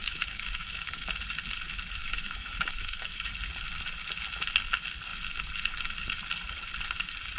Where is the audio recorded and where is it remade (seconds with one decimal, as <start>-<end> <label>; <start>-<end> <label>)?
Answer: 0.0-1.1 remade; 1.1-2.0 recorded; 2.0-3.3 remade; 3.3-7.4 recorded